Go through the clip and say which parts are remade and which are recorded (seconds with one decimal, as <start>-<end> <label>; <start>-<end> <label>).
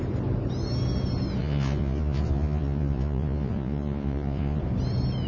0.0-1.4 recorded; 1.4-4.6 remade; 4.6-5.3 recorded